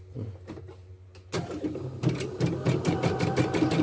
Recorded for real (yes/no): yes